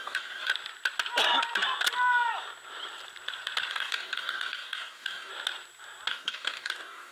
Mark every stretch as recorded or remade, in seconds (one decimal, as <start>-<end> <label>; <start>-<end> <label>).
0.0-0.5 remade; 0.5-3.7 recorded; 3.7-5.3 remade; 5.3-6.1 recorded; 6.1-7.1 remade